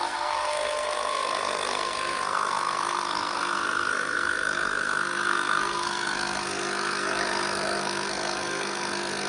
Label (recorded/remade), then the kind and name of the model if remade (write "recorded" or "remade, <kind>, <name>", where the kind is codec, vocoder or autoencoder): remade, codec, SNAC